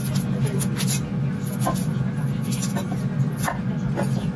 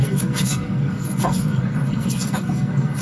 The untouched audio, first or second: first